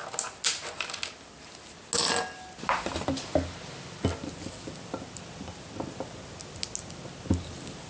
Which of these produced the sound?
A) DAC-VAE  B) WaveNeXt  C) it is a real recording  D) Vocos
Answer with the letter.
C